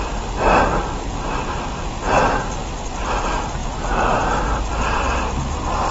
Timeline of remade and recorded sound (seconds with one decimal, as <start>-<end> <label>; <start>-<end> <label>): 0.0-5.9 recorded